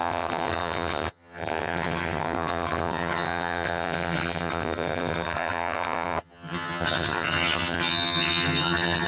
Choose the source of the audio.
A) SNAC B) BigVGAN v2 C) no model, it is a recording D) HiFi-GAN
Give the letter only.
D